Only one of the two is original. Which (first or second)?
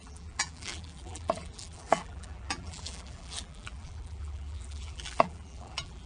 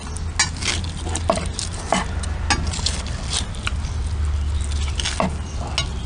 second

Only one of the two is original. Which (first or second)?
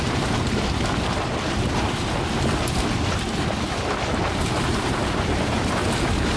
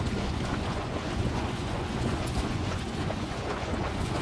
first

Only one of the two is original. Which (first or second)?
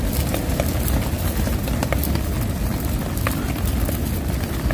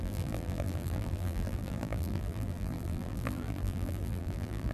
first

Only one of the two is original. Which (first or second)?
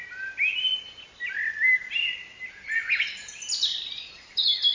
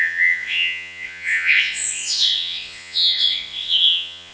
first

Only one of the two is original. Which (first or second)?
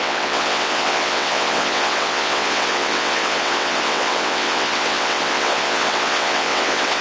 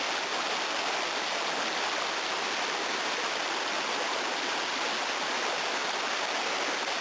second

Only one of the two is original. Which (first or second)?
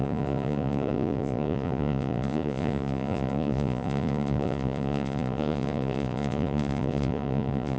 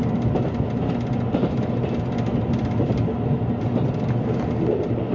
second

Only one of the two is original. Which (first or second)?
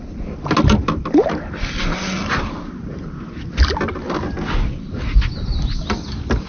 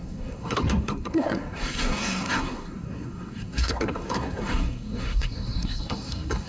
first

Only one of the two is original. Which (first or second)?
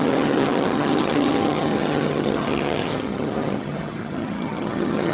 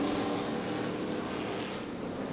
second